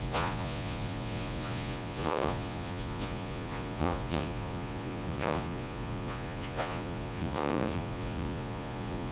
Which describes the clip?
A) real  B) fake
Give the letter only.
B